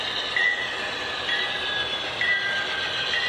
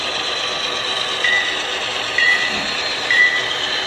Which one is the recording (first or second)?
second